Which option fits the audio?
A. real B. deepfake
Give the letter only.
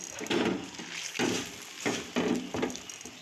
A